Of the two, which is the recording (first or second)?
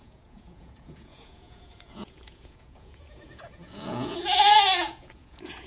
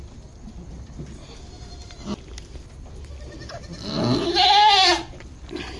second